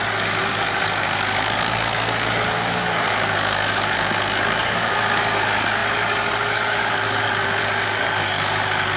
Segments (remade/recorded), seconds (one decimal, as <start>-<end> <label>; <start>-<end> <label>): 0.0-9.0 remade